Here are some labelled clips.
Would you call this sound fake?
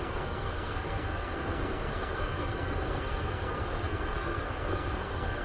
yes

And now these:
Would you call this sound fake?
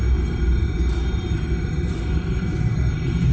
yes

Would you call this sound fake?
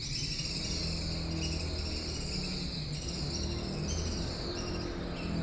no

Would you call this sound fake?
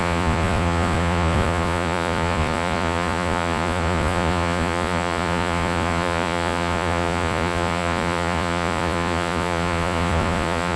yes